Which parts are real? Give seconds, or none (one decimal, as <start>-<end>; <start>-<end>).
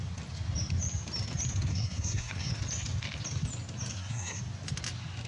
0.0-1.7; 2.5-3.9; 4.4-5.3